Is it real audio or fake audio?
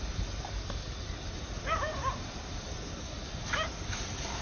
real